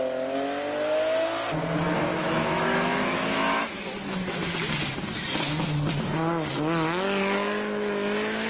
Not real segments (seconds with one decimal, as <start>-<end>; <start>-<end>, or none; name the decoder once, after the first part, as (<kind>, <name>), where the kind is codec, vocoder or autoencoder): 2.1-4.5 (autoencoder, DAC-VAE)